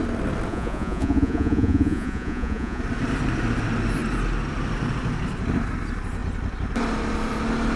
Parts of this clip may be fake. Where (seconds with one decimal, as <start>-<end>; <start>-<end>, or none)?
0.5-2.8